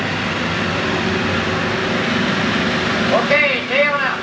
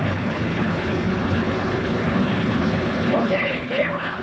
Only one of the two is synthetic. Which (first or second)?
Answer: second